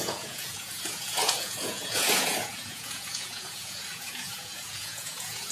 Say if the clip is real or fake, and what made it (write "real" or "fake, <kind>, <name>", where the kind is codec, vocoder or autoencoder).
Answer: fake, vocoder, Vocos